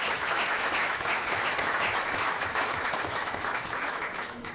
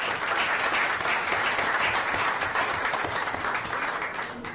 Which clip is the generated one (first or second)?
first